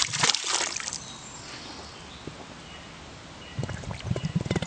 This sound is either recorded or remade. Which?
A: recorded